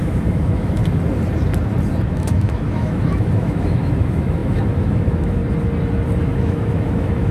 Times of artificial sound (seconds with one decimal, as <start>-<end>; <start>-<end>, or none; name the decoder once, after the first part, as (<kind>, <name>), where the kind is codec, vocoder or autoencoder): 0.0-0.8 (autoencoder, DAC-VAE); 2.1-5.4; 6.2-7.3

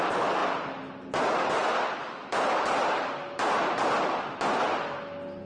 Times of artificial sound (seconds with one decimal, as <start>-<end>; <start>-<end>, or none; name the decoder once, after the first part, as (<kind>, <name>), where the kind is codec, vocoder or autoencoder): none

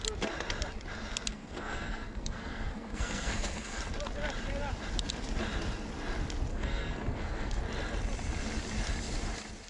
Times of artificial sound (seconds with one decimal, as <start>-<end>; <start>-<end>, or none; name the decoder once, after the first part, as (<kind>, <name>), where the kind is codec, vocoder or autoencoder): 1.3-3.8 (codec, SNAC); 6.5-7.6